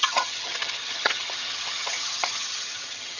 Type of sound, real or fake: fake